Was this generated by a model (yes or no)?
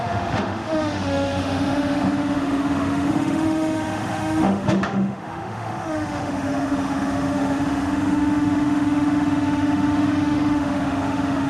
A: yes